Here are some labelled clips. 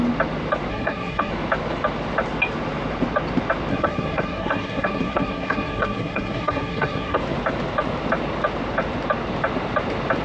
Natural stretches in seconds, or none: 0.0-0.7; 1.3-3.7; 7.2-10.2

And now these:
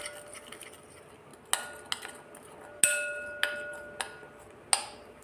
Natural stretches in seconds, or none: 0.0-5.2

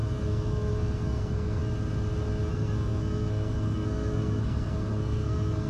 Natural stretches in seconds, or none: 1.6-2.5

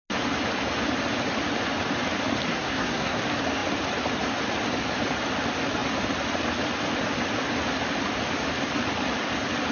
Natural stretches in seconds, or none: 0.0-2.5; 3.2-9.7

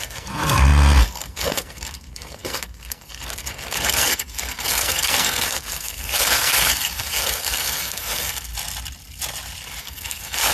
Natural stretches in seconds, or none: 8.5-9.8